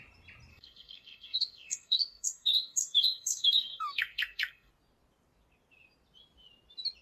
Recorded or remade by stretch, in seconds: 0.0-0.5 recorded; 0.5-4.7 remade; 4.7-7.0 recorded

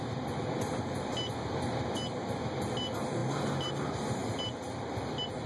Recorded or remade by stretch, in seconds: 0.0-5.5 recorded

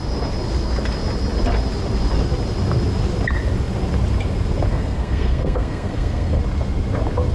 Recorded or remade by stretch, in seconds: 0.0-4.7 recorded; 4.7-6.4 remade; 6.4-7.3 recorded

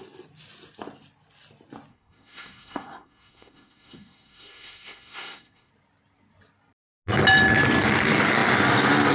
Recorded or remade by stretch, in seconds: 0.0-1.9 recorded; 1.9-5.7 remade; 5.7-9.1 recorded